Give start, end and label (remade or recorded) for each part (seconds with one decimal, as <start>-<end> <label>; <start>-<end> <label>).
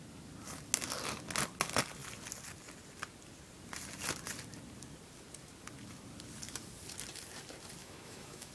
0.0-7.8 recorded; 7.8-8.5 remade